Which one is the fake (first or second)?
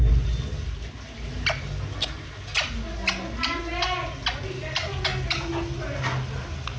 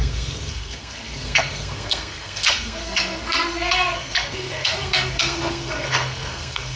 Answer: second